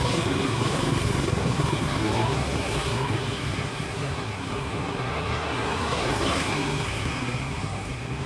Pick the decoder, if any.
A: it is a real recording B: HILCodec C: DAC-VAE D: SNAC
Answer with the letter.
D